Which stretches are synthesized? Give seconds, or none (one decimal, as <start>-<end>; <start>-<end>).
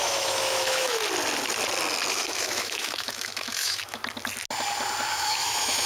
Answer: 0.0-1.0; 2.1-4.0; 5.1-5.9